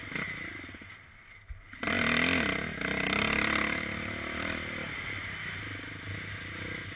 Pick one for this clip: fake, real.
real